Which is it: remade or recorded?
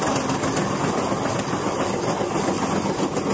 recorded